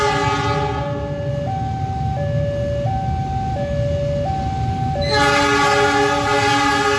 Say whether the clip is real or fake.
real